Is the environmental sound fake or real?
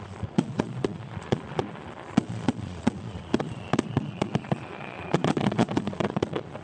fake